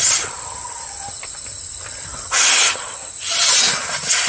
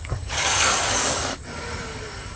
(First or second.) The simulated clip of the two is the second